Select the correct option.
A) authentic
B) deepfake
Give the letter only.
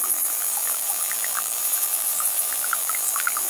B